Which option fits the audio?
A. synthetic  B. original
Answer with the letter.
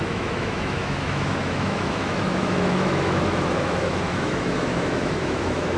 A